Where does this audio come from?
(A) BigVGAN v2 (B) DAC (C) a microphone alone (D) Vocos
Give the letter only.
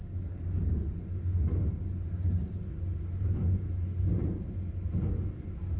C